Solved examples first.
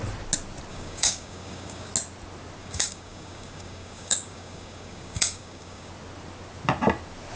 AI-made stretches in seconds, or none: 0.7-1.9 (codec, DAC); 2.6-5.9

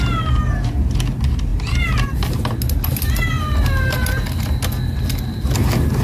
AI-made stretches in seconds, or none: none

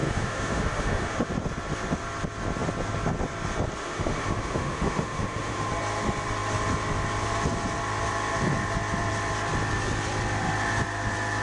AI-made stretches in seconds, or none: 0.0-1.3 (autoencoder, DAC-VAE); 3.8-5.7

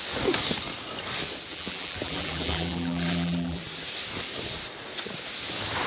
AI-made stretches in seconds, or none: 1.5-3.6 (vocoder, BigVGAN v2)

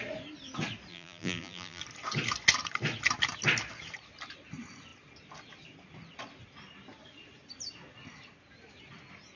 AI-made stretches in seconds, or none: 0.9-1.8 (vocoder, BigVGAN v2)

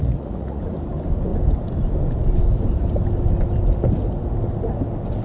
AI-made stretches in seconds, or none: 0.0-0.6 (vocoder, Vocos)